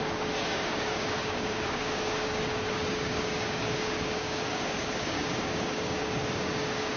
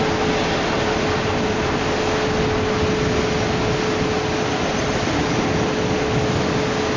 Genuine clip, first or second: second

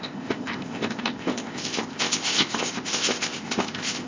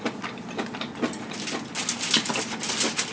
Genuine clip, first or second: second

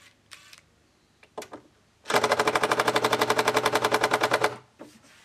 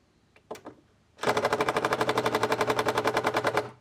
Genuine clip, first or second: first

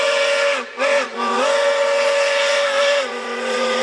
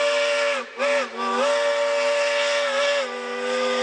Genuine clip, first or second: second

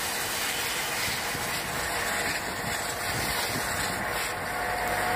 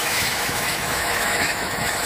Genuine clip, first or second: first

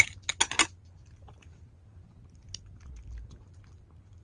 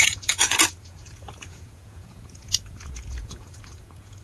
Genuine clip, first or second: first